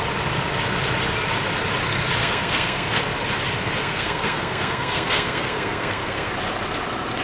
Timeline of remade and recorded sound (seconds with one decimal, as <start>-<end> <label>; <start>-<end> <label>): 0.0-2.2 recorded; 2.2-3.0 remade; 3.0-3.8 recorded; 3.8-6.3 remade; 6.3-7.2 recorded